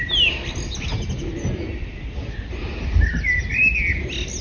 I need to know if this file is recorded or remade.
recorded